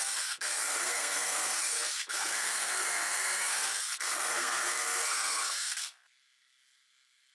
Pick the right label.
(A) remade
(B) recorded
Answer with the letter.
A